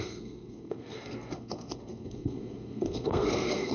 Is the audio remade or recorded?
remade